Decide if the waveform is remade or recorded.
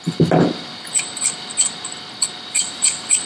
recorded